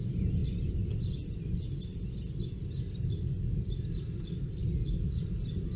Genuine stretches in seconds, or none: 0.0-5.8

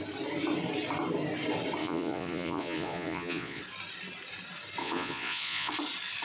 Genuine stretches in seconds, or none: 0.0-1.8; 3.6-4.8; 5.7-6.2

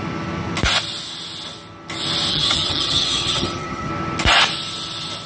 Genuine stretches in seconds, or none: 0.0-2.3; 3.9-5.3